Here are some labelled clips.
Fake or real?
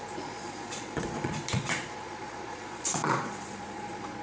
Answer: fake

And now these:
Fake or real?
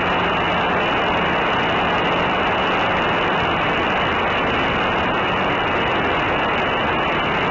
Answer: real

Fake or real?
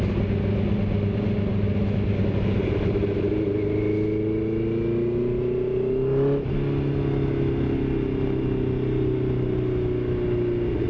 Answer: real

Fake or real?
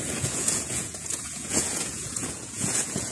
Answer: fake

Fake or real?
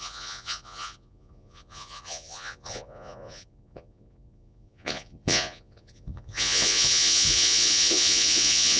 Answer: fake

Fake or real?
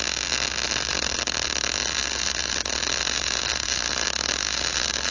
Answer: real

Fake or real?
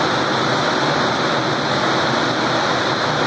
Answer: real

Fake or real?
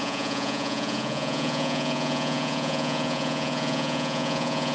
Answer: fake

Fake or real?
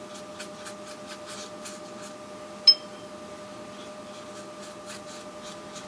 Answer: real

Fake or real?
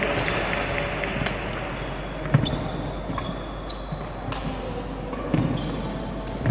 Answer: real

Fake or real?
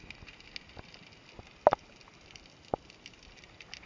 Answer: real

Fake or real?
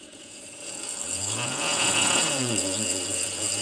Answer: fake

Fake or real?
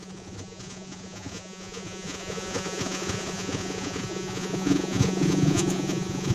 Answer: fake